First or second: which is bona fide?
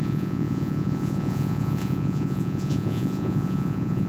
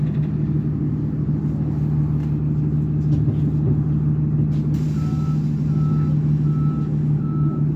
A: second